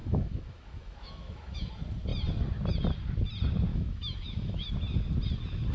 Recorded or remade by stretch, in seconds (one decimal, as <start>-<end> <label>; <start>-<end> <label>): 0.0-1.7 remade; 1.7-3.7 recorded; 3.7-4.7 remade; 4.7-5.7 recorded